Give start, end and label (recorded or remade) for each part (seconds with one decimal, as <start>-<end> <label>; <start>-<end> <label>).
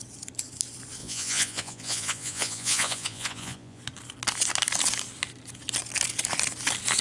0.0-1.0 recorded; 1.0-3.8 remade; 3.8-7.0 recorded